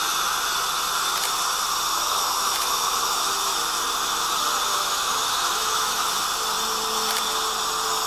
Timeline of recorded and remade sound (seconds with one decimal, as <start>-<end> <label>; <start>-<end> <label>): 0.0-1.9 recorded; 1.9-3.3 remade; 3.3-4.7 recorded; 4.7-6.1 remade; 6.1-8.1 recorded